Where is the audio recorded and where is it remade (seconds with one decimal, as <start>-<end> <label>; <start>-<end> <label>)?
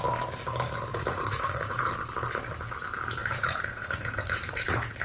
0.0-0.9 recorded; 0.9-1.9 remade; 1.9-3.2 recorded; 3.2-5.0 remade